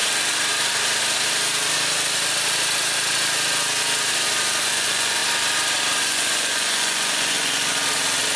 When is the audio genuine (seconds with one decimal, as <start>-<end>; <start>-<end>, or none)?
0.0-4.6; 5.2-6.0; 7.8-8.4